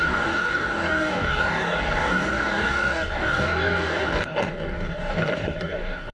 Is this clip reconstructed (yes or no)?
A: yes